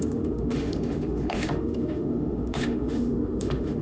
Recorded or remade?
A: remade